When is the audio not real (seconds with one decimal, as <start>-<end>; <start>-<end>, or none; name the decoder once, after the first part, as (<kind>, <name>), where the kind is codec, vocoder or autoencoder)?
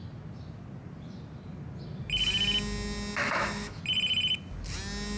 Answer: 3.2-3.8 (autoencoder, DAC-VAE)